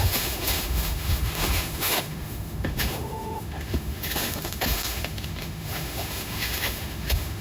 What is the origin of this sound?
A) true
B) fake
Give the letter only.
B